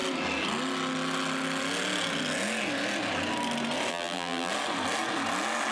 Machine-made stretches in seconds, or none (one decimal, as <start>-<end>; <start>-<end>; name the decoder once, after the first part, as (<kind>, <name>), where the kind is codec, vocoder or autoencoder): 3.9-4.5 (vocoder, BigVGAN v2)